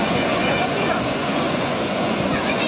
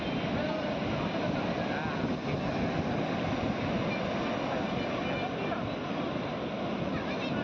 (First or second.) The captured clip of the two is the second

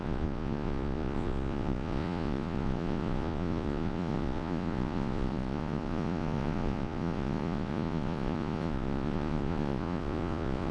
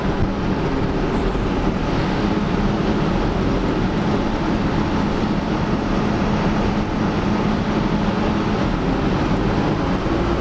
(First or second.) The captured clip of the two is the second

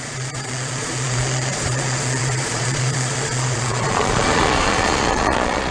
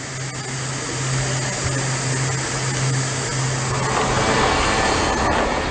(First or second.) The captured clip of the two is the second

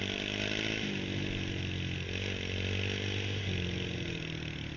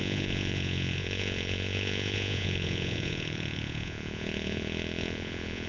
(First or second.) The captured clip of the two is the first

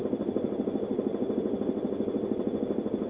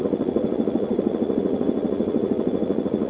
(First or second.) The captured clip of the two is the first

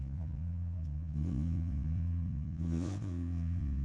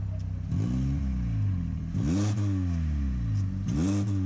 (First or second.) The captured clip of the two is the second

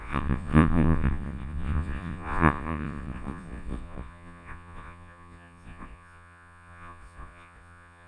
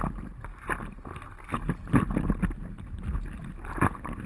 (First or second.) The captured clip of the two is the second